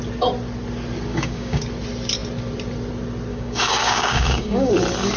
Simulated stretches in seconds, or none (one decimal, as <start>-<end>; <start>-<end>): 1.1-1.6; 3.3-4.7

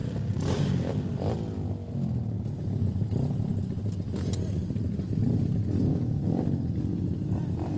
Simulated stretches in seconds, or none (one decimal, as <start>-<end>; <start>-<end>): 0.0-0.9; 5.8-6.4

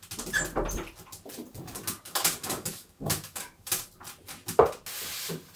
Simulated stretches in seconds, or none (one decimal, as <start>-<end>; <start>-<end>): 1.5-3.9

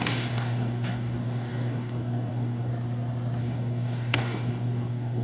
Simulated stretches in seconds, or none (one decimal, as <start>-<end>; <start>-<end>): 0.0-2.7; 3.4-5.2

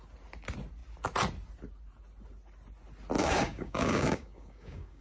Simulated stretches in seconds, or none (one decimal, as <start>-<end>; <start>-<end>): 3.2-5.0

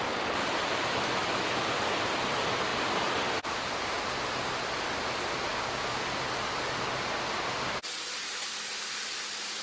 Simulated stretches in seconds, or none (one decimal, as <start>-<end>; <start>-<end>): 5.5-6.0

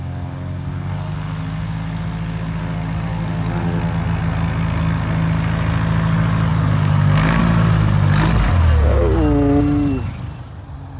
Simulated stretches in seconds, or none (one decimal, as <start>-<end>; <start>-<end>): 3.1-3.8; 6.5-7.4

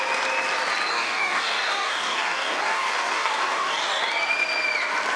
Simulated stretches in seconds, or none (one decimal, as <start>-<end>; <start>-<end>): 0.9-4.0